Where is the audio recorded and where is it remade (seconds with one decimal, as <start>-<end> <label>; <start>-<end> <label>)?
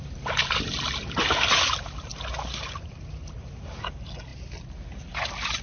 0.0-5.6 recorded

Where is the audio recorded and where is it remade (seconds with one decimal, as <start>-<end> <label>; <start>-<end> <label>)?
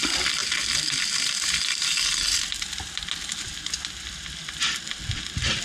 0.0-5.6 recorded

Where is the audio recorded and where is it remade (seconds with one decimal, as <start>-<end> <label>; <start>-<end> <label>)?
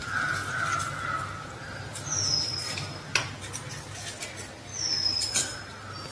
0.0-6.1 recorded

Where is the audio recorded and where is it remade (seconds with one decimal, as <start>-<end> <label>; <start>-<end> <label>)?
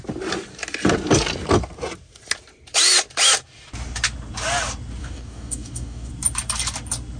0.0-5.0 recorded; 5.0-6.1 remade; 6.1-7.2 recorded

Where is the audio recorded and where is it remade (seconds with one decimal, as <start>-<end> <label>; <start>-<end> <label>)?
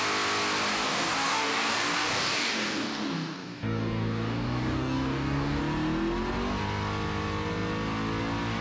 0.0-0.7 recorded; 0.7-5.6 remade; 5.6-8.6 recorded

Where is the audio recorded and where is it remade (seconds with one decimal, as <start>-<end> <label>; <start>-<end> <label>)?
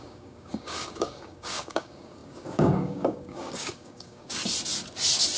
0.0-4.4 remade; 4.4-5.4 recorded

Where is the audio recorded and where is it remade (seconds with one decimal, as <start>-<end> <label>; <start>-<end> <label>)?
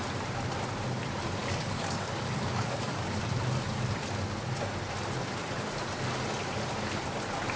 0.0-1.4 recorded; 1.4-3.2 remade; 3.2-7.6 recorded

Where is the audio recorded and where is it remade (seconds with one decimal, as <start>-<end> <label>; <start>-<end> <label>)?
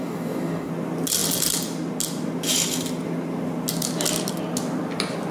0.0-0.7 remade; 0.7-5.3 recorded